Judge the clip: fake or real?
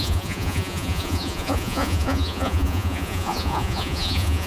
fake